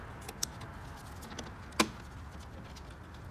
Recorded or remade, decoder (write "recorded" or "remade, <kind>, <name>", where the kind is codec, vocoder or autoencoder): recorded